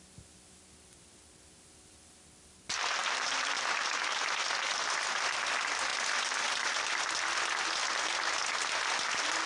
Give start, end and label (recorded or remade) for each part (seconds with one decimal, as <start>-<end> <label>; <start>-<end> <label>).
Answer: 0.0-3.0 recorded; 3.0-5.4 remade; 5.4-5.9 recorded; 5.9-7.1 remade; 7.1-9.5 recorded